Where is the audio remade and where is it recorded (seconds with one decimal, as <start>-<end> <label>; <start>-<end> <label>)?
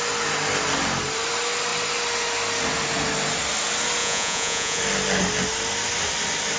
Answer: 0.0-4.0 recorded; 4.0-4.8 remade; 4.8-6.6 recorded